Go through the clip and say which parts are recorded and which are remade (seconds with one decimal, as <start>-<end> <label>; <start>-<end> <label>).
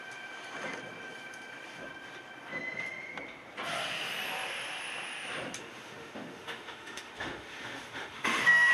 0.0-5.6 recorded; 5.6-8.7 remade